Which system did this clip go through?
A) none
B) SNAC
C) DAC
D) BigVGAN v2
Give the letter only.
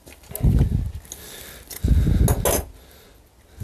A